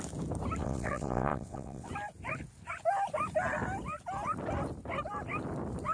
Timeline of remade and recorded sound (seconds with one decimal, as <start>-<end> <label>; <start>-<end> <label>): 0.0-0.6 recorded; 0.6-1.9 remade; 1.9-5.9 recorded